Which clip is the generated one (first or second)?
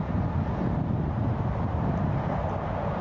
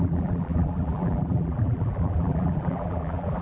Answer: second